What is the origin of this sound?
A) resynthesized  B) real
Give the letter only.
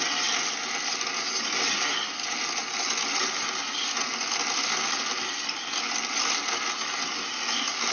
B